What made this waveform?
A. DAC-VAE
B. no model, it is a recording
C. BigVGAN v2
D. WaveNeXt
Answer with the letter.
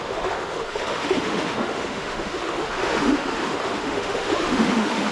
A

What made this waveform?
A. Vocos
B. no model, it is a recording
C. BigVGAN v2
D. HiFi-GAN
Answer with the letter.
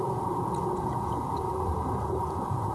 A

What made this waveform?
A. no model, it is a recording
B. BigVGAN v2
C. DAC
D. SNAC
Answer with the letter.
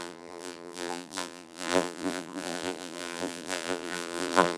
B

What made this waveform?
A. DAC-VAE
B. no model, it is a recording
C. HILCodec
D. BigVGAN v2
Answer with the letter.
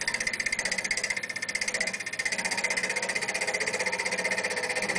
B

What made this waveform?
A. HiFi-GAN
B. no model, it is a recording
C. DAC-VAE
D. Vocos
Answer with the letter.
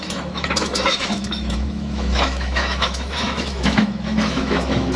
C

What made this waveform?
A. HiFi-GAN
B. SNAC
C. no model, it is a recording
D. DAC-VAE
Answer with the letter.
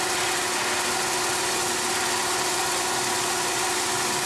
C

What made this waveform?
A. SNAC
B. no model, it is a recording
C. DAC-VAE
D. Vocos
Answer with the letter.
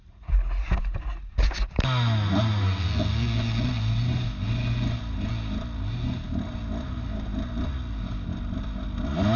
B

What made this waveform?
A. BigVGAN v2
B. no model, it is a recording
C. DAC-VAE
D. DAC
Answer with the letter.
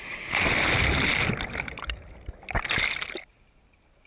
B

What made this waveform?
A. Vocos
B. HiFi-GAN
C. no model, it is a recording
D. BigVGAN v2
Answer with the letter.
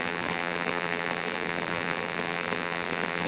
D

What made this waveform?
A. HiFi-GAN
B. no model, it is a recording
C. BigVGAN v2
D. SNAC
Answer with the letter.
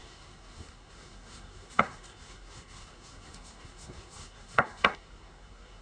D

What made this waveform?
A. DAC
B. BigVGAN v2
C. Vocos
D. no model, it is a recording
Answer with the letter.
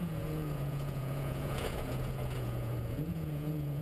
C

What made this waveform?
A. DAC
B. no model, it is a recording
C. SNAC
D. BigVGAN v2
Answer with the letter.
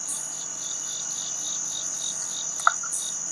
B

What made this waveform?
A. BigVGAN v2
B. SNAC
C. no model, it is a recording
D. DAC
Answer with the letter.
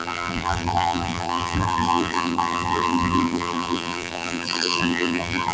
A